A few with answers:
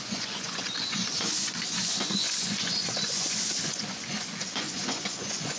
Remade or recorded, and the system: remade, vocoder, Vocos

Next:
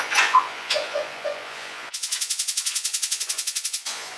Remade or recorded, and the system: remade, vocoder, Vocos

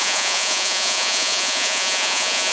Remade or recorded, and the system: remade, vocoder, Vocos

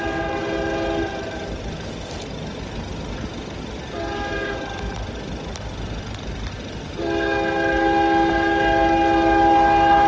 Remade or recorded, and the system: recorded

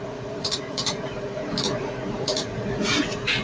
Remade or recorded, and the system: remade, vocoder, Vocos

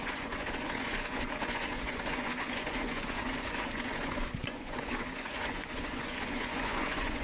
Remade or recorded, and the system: remade, vocoder, Vocos